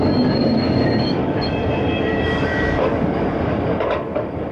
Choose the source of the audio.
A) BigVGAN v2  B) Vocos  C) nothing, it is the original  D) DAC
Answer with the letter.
D